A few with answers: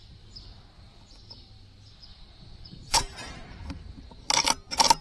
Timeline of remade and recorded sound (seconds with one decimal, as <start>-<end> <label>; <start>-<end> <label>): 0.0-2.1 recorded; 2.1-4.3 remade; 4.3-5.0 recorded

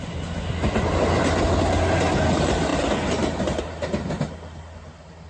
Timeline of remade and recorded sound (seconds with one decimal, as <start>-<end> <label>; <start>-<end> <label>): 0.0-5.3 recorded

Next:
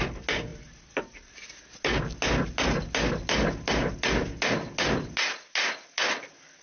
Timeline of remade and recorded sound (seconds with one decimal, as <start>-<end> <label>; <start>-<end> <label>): 0.0-6.6 recorded

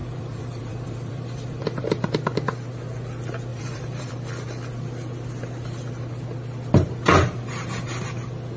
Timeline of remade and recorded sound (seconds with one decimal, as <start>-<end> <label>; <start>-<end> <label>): 0.0-2.1 remade; 2.1-3.5 recorded; 3.5-4.1 remade; 4.1-8.6 recorded

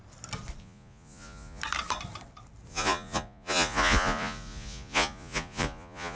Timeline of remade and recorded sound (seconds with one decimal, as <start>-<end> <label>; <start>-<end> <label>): 0.0-0.6 recorded; 0.6-1.6 remade; 1.6-2.7 recorded; 2.7-6.2 remade

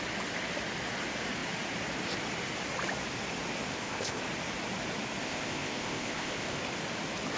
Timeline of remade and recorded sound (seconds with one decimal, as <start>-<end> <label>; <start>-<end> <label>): 0.0-3.7 recorded; 3.7-4.2 remade; 4.2-5.2 recorded; 5.2-6.6 remade; 6.6-7.4 recorded